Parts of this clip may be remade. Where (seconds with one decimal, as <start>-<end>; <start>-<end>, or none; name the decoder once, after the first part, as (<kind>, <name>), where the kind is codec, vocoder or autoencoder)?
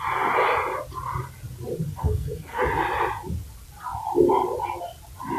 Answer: 2.0-2.6 (codec, SNAC)